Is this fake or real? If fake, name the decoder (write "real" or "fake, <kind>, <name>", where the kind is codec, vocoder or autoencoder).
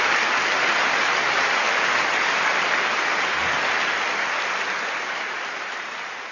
real